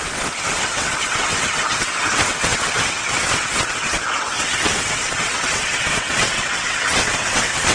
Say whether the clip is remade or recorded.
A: remade